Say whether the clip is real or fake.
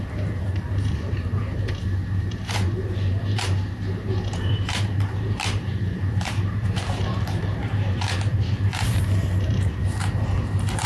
fake